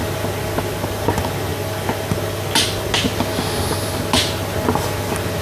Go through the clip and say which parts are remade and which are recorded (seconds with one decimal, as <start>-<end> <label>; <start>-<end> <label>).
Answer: 0.0-5.4 recorded